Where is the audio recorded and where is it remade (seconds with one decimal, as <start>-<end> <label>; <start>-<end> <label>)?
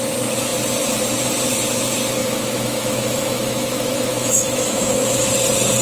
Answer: 0.0-2.2 recorded; 2.2-5.3 remade; 5.3-5.8 recorded